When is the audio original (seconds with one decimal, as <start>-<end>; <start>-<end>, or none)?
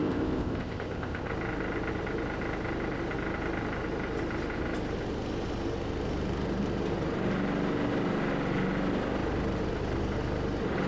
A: 1.3-10.9